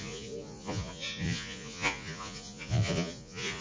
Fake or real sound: fake